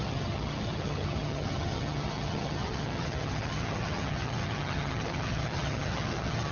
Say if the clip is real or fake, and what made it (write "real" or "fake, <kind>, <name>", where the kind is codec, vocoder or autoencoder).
fake, vocoder, HiFi-GAN